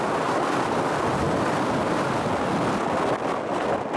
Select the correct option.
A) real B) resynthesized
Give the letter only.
A